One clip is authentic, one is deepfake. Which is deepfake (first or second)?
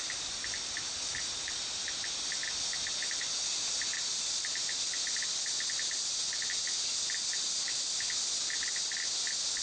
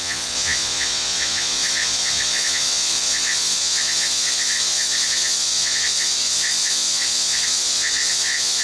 second